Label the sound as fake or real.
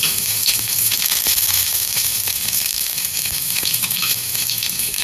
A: fake